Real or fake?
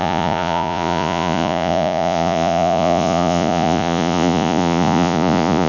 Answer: fake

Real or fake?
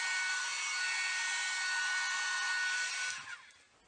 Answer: real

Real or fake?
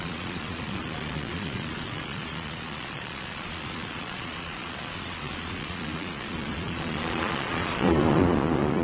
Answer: fake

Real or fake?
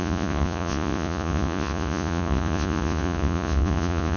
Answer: fake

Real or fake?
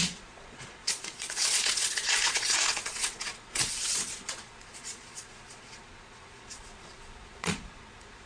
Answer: fake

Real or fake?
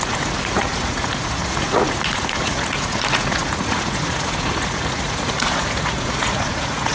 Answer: fake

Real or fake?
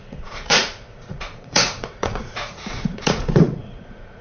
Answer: fake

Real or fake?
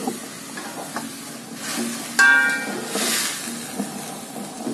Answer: real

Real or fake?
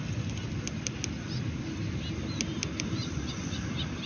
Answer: real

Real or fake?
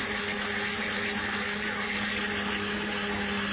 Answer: real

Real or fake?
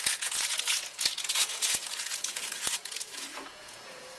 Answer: fake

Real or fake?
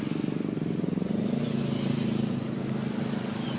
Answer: real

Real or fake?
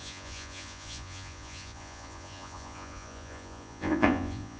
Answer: fake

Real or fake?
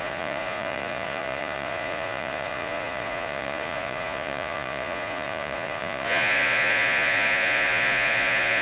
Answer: fake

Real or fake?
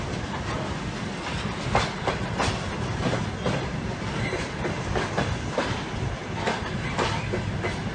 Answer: real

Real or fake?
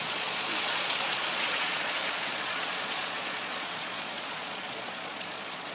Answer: fake